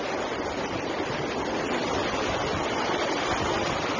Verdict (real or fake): fake